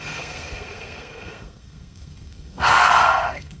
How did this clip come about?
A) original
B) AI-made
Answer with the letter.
B